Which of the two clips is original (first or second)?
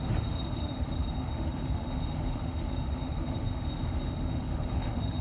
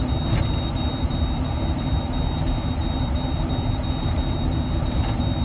second